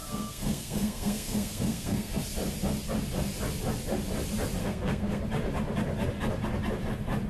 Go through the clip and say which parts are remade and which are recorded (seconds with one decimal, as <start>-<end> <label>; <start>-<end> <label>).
0.0-2.2 remade; 2.2-4.6 recorded; 4.6-5.2 remade; 5.2-7.3 recorded